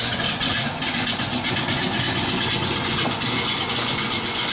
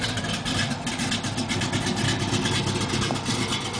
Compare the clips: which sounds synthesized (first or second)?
first